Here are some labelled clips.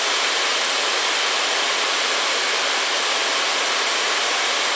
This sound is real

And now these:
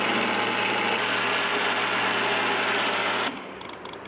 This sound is real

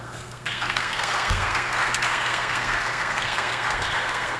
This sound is fake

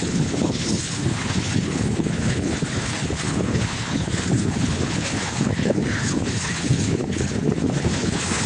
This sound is fake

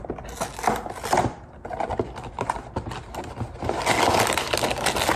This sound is real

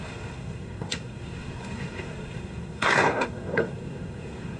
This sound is fake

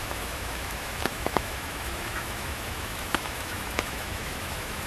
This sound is fake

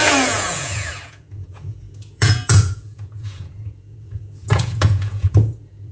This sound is fake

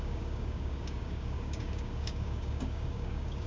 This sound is fake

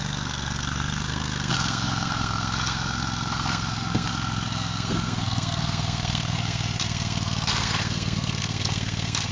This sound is fake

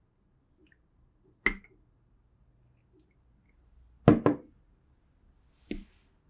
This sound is real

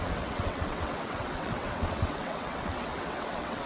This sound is fake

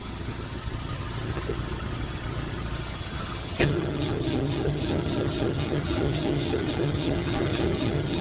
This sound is fake